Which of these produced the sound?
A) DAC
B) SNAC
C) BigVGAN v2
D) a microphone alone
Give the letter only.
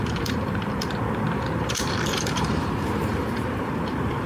C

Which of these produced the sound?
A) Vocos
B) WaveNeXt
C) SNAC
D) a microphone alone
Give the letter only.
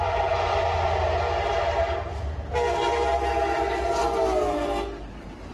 D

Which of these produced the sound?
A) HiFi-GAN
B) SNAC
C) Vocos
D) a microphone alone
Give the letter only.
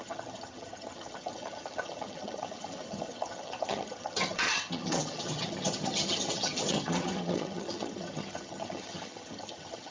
A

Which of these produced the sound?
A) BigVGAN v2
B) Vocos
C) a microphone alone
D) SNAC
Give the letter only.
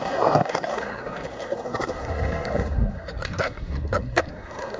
D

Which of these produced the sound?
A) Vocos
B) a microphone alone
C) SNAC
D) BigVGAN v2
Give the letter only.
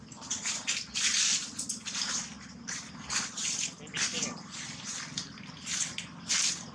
B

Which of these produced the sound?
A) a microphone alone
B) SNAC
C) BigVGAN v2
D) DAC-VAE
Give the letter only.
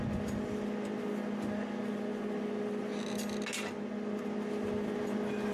A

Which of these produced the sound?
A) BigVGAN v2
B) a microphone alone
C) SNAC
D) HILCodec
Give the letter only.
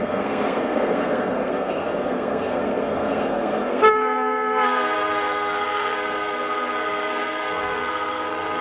C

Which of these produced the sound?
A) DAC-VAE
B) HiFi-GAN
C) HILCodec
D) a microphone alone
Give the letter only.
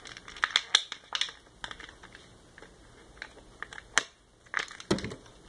D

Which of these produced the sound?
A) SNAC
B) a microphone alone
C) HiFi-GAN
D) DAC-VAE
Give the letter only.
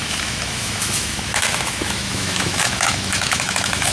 D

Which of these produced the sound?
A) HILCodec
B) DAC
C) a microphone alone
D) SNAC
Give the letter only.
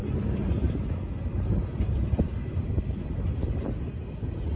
C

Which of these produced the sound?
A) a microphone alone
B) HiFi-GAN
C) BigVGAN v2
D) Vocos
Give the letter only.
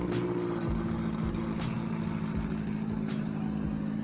A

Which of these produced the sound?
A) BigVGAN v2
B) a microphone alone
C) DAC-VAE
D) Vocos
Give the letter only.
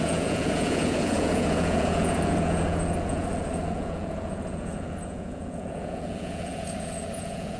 D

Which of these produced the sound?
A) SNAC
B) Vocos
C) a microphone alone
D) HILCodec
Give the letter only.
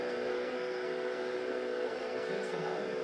A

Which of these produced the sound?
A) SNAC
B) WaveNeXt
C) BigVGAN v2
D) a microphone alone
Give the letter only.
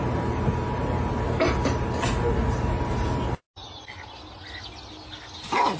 D